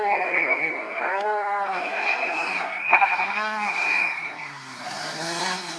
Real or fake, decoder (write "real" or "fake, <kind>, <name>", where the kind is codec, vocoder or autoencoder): fake, codec, SNAC